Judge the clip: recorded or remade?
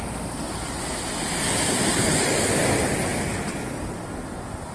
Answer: recorded